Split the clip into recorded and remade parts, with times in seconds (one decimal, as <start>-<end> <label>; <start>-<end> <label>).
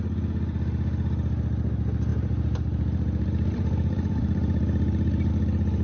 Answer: 0.0-2.1 recorded; 2.1-5.3 remade; 5.3-5.8 recorded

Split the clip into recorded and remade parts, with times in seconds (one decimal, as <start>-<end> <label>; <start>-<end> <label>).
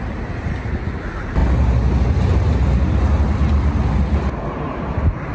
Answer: 0.0-5.3 recorded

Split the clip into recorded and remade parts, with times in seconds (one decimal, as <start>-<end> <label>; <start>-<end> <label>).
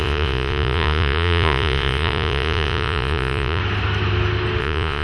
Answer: 0.0-3.6 remade; 3.6-4.6 recorded; 4.6-5.0 remade